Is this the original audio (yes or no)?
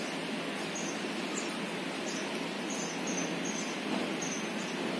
yes